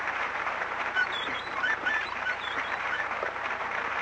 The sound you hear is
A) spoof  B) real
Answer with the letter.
A